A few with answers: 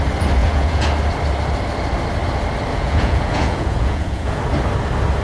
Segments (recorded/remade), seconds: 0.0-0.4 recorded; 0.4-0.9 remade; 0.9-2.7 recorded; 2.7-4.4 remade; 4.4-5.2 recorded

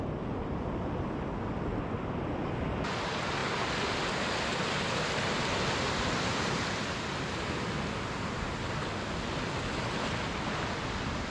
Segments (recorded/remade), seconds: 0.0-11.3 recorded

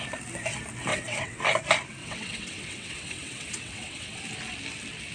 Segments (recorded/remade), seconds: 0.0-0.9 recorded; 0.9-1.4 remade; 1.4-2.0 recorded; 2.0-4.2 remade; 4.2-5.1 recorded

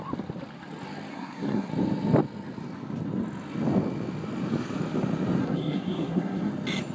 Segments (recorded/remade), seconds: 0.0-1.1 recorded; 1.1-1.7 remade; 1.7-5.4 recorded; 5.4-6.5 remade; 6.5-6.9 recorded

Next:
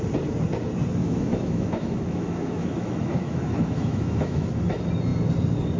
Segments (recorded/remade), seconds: 0.0-1.0 recorded; 1.0-4.5 remade; 4.5-5.8 recorded

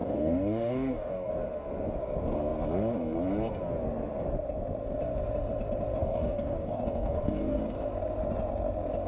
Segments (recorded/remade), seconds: 0.0-1.3 remade; 1.3-6.0 recorded; 6.0-7.6 remade; 7.6-9.1 recorded

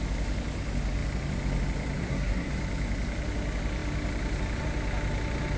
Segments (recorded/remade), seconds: 0.0-2.0 recorded; 2.0-2.5 remade; 2.5-5.6 recorded